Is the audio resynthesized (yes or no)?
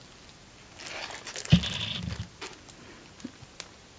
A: no